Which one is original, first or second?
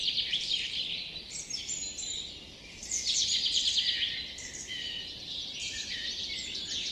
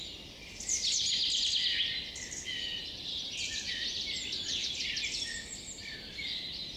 second